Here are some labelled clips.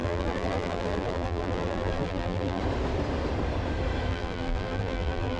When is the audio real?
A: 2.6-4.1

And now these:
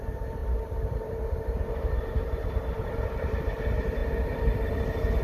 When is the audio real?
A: 0.0-0.4; 3.5-4.0; 4.8-5.2

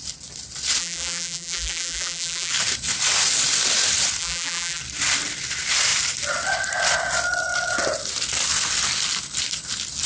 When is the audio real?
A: 0.0-0.8; 2.5-4.2; 4.8-10.1

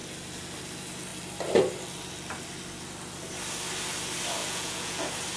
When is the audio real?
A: 0.0-4.4; 5.0-5.4

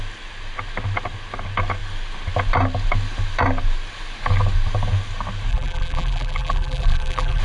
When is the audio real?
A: 0.0-5.5

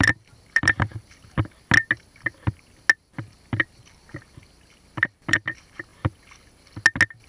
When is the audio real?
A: 0.9-3.1; 5.9-7.3

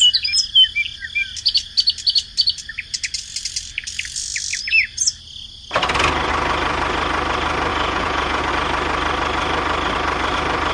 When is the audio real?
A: 0.0-7.7; 8.4-10.7